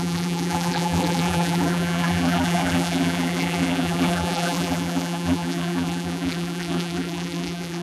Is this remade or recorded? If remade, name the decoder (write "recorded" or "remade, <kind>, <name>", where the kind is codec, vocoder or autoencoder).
remade, vocoder, BigVGAN v2